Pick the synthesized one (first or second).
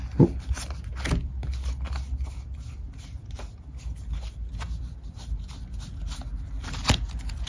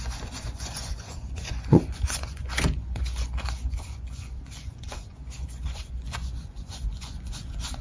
second